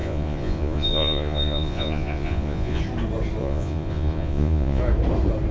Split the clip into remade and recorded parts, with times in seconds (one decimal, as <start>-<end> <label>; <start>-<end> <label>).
0.0-2.8 remade; 2.8-3.4 recorded; 3.4-4.8 remade; 4.8-5.5 recorded